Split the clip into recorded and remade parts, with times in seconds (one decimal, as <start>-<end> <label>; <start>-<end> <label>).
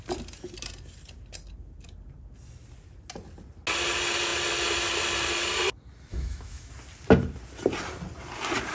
0.0-6.1 recorded; 6.1-6.7 remade; 6.7-8.7 recorded